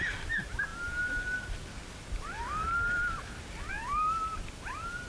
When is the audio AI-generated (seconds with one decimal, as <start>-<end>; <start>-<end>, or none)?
none